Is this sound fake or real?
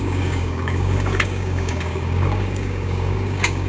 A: fake